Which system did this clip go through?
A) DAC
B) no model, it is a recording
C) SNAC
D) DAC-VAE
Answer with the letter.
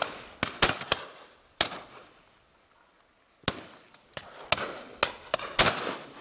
B